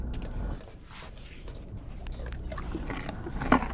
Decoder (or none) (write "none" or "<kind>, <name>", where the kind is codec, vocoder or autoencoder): none